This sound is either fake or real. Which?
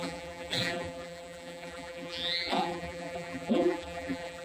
fake